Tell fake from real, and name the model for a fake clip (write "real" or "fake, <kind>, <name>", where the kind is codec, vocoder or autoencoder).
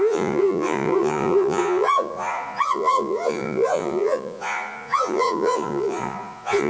fake, vocoder, Vocos